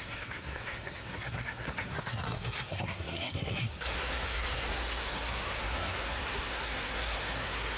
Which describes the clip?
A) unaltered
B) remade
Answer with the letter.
B